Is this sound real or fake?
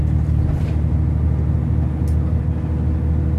real